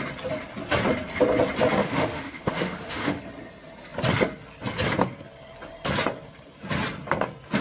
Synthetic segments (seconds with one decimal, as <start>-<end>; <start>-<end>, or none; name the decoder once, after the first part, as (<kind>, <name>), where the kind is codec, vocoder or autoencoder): 1.8-3.2 (autoencoder, DAC-VAE)